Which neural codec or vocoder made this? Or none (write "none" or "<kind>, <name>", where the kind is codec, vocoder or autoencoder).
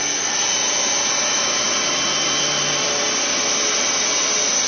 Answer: none